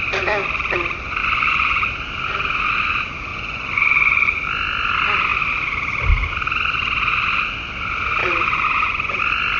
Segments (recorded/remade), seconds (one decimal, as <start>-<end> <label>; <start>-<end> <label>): 0.0-1.2 recorded; 1.2-1.9 remade; 1.9-3.3 recorded; 3.3-4.3 remade; 4.3-8.2 recorded; 8.2-9.2 remade; 9.2-9.6 recorded